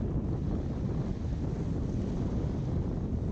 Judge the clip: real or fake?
real